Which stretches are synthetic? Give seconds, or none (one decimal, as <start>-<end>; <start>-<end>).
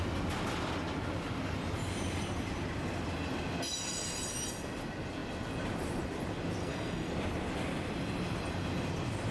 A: 6.6-7.1